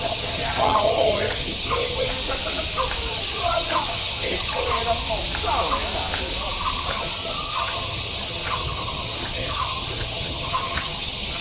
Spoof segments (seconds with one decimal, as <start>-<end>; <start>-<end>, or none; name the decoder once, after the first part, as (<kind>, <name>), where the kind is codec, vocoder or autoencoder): 0.0-2.1 (vocoder, HiFi-GAN); 3.1-4.8; 6.9-11.4